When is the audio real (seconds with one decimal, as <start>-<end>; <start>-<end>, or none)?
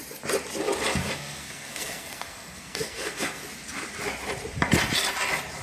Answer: 0.0-1.0; 3.4-5.6